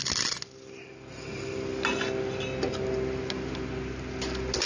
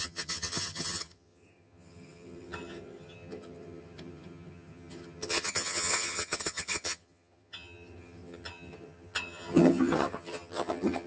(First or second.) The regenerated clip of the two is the second